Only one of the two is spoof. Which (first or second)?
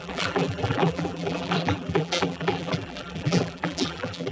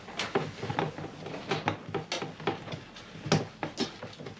first